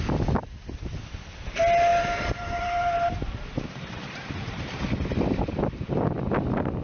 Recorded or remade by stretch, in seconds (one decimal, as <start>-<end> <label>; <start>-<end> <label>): 0.0-1.9 recorded; 1.9-5.6 remade; 5.6-6.8 recorded